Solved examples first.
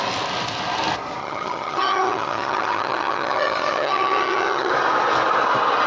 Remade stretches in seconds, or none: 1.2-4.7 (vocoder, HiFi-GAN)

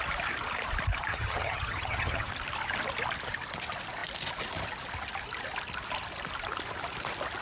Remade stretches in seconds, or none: 1.1-2.3 (vocoder, HiFi-GAN)

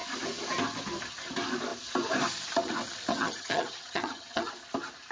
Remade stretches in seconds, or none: 3.1-4.5 (vocoder, HiFi-GAN)